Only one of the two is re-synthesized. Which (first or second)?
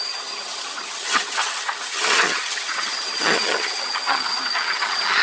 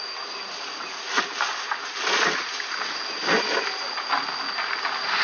first